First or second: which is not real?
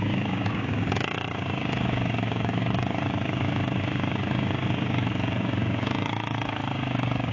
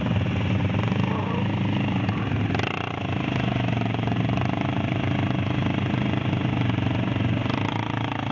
first